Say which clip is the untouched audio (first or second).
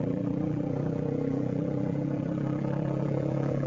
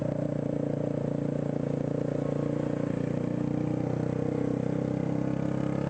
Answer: second